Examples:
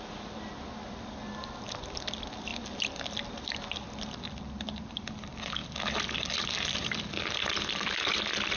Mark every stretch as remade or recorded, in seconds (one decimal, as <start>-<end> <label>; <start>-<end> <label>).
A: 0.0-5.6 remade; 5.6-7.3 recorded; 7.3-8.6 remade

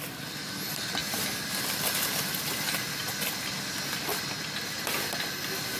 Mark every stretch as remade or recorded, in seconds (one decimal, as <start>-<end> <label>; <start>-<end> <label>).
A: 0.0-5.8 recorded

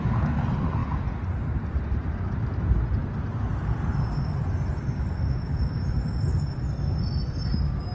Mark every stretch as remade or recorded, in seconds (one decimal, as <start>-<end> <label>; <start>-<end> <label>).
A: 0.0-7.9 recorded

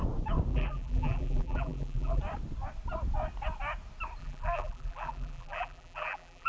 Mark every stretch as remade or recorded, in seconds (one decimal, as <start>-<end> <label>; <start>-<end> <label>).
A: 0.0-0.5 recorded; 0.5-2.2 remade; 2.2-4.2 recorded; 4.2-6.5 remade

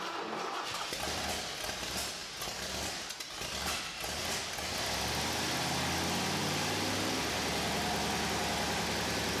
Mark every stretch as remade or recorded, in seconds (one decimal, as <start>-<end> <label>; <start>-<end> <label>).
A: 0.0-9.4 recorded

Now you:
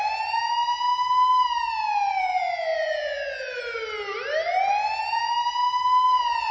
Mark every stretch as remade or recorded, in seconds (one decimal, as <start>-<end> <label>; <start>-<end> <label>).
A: 0.0-6.5 recorded

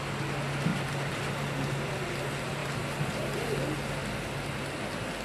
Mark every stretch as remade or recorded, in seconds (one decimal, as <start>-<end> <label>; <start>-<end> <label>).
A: 0.0-0.7 recorded; 0.7-1.9 remade; 1.9-2.6 recorded; 2.6-3.1 remade; 3.1-5.2 recorded